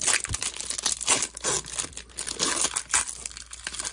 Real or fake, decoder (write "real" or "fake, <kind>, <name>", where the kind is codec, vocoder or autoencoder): real